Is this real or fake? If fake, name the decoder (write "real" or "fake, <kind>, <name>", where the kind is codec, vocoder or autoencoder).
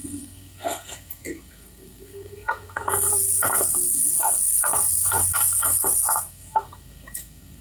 fake, codec, SNAC